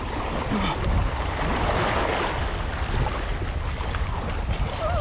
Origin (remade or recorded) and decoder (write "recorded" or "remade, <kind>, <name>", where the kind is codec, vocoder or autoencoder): recorded